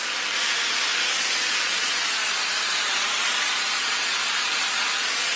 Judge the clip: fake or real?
real